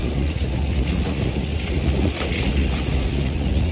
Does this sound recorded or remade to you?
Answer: remade